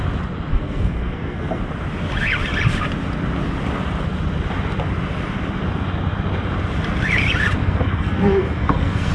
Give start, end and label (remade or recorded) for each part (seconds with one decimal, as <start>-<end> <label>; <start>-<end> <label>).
0.0-0.5 recorded; 0.5-1.6 remade; 1.6-7.6 recorded; 7.6-9.1 remade